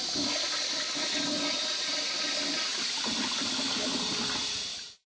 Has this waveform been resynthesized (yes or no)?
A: no